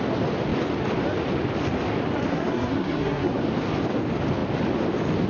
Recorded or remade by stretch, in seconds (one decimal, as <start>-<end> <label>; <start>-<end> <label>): 0.0-2.3 recorded; 2.3-3.4 remade; 3.4-5.3 recorded